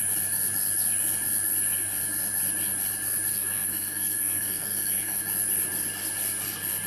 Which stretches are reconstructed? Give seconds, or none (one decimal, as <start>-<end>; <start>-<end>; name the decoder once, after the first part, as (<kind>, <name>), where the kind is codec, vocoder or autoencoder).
3.3-5.2 (codec, SNAC)